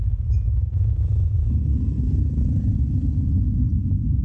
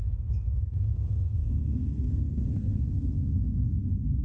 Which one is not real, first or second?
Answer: second